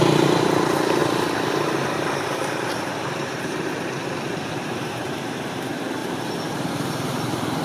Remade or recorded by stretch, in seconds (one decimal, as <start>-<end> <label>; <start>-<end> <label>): 0.0-6.0 remade; 6.0-6.5 recorded; 6.5-7.6 remade